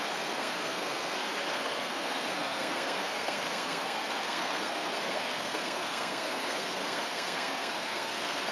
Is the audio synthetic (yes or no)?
yes